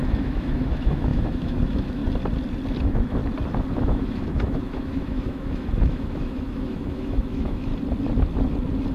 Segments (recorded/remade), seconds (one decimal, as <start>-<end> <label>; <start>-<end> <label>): 0.0-2.0 remade; 2.0-2.8 recorded; 2.8-3.2 remade; 3.2-3.8 recorded; 3.8-7.7 remade; 7.7-8.9 recorded